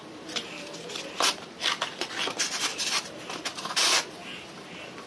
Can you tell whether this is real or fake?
real